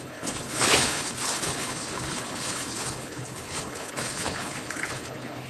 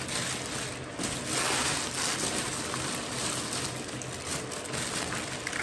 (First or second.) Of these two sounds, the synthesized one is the first